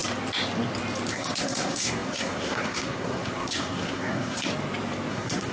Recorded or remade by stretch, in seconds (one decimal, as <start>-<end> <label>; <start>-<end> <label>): 0.0-1.1 recorded; 1.1-4.5 remade; 4.5-5.1 recorded; 5.1-5.5 remade